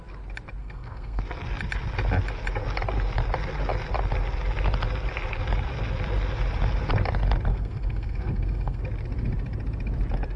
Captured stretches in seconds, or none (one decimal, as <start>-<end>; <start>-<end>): 0.0-0.6; 1.2-7.5; 8.8-10.4